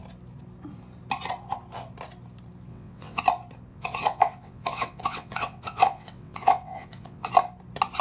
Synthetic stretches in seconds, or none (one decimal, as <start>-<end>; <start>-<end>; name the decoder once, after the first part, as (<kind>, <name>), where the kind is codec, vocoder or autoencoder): 2.7-3.2 (vocoder, WaveNeXt); 3.7-7.3